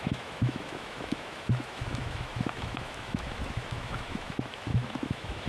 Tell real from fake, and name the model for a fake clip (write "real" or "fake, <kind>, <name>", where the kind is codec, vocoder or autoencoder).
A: fake, autoencoder, DAC-VAE